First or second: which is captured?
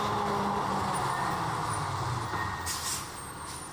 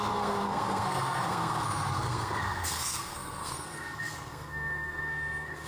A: first